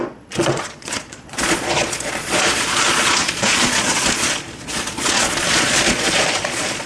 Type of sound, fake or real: fake